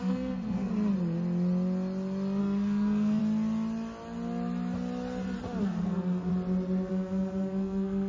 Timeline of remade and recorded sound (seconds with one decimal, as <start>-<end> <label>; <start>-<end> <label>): 0.0-0.7 remade; 0.7-2.4 recorded; 2.4-3.2 remade; 3.2-5.6 recorded; 5.6-6.3 remade; 6.3-6.9 recorded; 6.9-8.1 remade